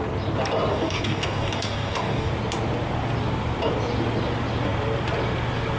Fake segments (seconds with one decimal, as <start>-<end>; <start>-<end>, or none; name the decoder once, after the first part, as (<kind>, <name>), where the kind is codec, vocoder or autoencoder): 0.7-2.3 (codec, DAC)